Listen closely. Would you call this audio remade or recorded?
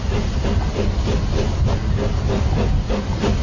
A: recorded